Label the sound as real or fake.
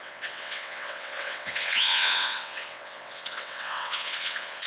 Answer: fake